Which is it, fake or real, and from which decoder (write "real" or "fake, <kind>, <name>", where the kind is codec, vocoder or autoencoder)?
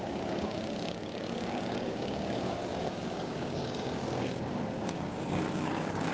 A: fake, codec, DAC